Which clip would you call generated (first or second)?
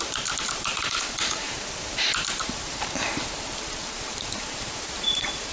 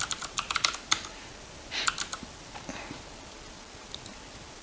first